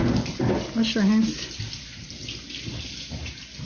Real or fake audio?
real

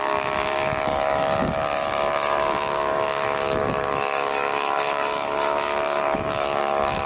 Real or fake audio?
fake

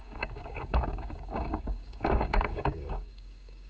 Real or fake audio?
fake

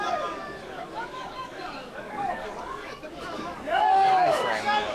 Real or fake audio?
fake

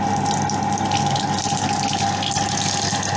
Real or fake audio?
real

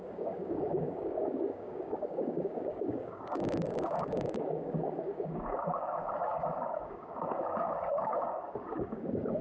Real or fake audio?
fake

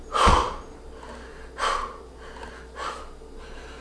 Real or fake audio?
real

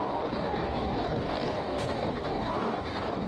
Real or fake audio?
fake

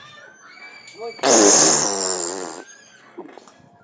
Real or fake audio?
real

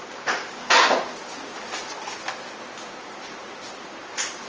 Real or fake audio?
real